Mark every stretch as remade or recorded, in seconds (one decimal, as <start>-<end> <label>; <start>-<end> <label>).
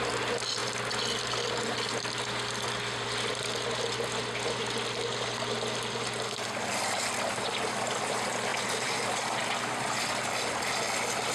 0.0-11.3 recorded